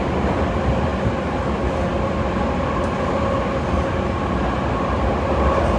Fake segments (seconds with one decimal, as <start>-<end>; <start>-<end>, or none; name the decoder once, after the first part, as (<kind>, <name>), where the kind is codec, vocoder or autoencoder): none